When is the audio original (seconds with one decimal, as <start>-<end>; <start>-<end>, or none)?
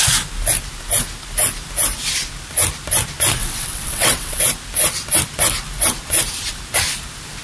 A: 0.0-3.4; 4.4-7.4